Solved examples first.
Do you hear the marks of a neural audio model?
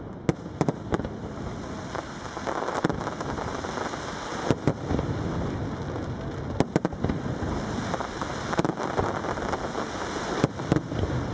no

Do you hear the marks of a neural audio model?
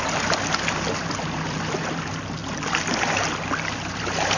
no